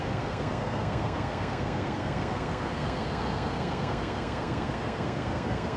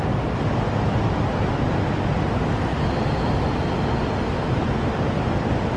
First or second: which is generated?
first